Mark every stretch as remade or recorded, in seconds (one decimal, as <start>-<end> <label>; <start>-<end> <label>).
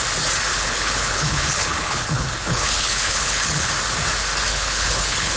0.0-0.5 recorded; 0.5-3.7 remade; 3.7-4.5 recorded; 4.5-5.4 remade